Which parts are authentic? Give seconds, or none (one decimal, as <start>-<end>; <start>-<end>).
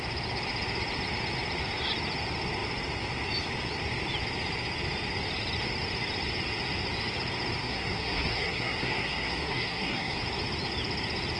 0.0-7.6; 10.2-11.4